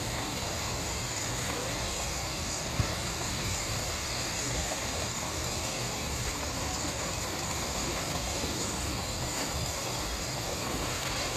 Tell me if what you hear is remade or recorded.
remade